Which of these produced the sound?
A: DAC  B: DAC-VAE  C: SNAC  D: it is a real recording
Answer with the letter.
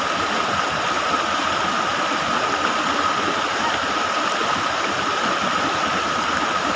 D